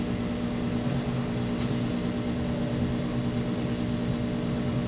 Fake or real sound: real